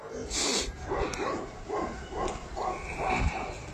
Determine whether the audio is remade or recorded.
recorded